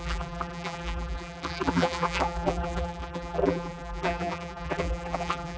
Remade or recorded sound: remade